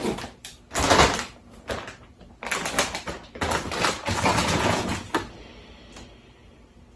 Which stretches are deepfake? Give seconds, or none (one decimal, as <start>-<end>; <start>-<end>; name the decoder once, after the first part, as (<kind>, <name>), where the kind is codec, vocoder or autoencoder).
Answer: 4.4-5.1 (vocoder, Vocos)